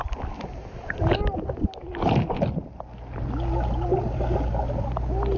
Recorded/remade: recorded